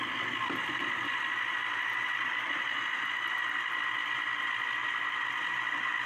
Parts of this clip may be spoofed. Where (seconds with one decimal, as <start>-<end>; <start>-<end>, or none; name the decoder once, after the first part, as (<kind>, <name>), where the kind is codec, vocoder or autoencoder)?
none